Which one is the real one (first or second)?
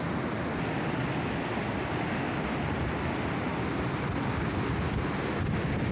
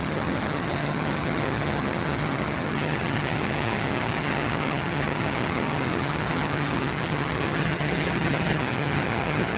first